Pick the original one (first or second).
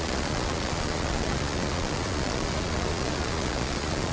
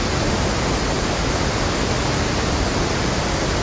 second